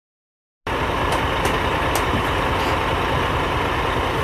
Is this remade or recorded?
recorded